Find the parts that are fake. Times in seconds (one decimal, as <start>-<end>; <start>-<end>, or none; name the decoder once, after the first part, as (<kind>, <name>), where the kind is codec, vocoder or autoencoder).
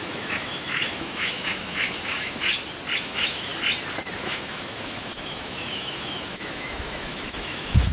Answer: 0.0-2.5 (autoencoder, DAC-VAE); 3.0-3.5; 4.1-7.9